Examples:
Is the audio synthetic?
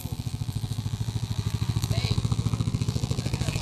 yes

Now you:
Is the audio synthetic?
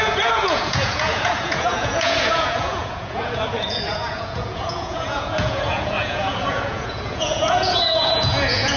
yes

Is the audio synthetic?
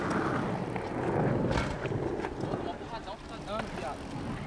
no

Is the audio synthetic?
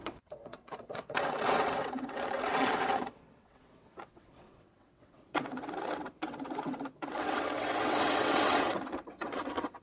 yes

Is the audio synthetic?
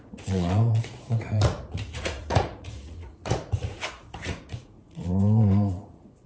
yes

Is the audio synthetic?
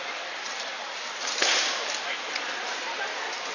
no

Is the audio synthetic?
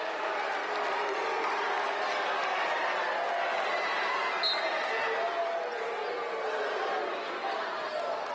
no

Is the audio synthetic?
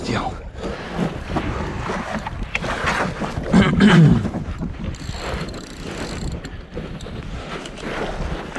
no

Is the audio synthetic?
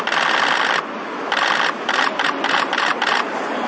no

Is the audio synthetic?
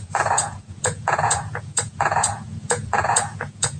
yes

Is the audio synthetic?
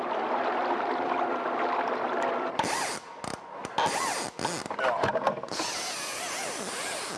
no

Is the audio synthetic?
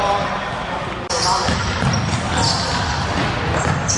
no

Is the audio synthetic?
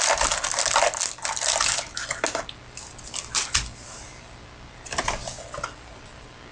no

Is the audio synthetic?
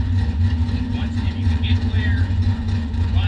yes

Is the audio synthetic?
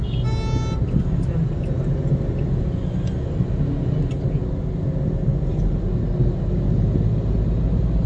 no